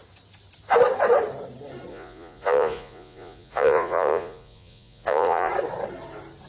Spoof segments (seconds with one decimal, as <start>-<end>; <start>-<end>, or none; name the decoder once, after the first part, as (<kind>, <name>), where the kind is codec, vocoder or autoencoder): 1.9-5.5 (vocoder, Vocos)